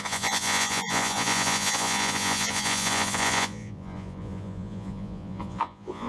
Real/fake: fake